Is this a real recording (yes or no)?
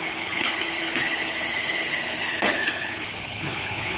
no